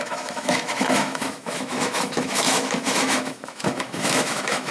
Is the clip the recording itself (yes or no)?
no